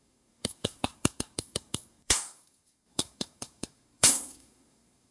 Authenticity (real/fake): fake